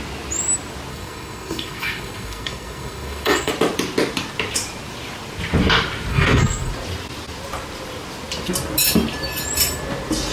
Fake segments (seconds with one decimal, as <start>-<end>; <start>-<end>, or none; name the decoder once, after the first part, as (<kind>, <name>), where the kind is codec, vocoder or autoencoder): 0.9-3.5 (codec, SNAC); 6.1-6.7